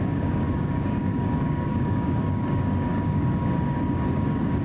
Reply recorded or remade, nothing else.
remade